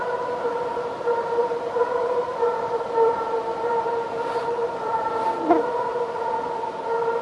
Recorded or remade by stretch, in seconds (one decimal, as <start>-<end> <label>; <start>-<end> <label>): 0.0-1.4 recorded; 1.4-3.7 remade; 3.7-4.6 recorded; 4.6-5.1 remade; 5.1-7.2 recorded